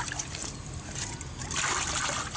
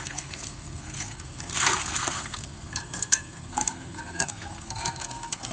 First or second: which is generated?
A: second